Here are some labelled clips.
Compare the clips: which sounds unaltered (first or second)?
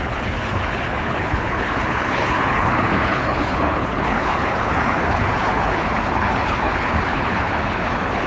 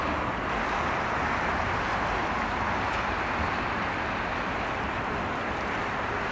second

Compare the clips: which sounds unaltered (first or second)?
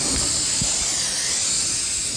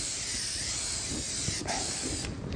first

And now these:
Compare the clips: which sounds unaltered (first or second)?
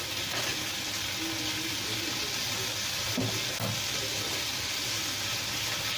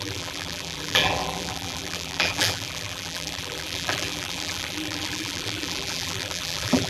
first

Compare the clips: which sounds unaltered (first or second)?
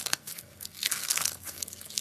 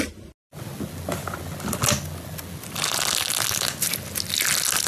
second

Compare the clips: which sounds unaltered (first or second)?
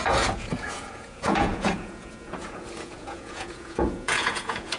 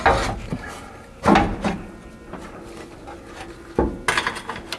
second